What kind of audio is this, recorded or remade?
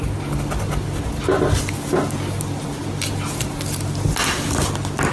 recorded